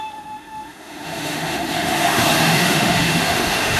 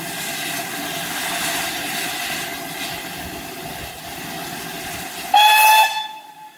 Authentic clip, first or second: second